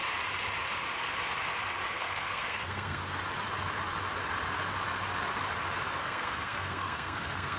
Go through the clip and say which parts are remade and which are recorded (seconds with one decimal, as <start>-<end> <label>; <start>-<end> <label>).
0.0-1.9 recorded; 1.9-3.0 remade; 3.0-6.0 recorded; 6.0-7.6 remade